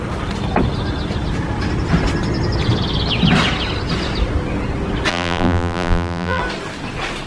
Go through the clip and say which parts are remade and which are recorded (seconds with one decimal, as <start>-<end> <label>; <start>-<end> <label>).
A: 0.0-5.1 recorded; 5.1-6.4 remade; 6.4-7.3 recorded